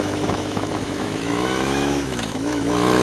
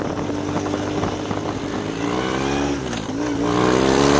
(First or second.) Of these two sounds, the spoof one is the first